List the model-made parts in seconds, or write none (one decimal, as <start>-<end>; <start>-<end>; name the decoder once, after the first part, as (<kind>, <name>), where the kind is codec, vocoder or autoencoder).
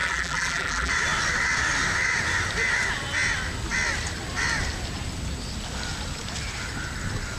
0.0-0.9 (vocoder, BigVGAN v2)